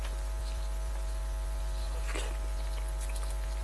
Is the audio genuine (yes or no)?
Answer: yes